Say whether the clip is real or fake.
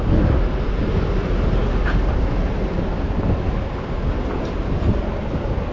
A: real